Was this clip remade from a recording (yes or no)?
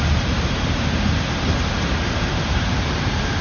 yes